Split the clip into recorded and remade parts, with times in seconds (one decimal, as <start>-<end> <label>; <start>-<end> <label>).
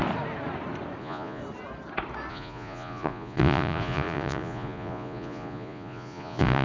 0.0-1.0 recorded; 1.0-1.4 remade; 1.4-2.3 recorded; 2.3-6.6 remade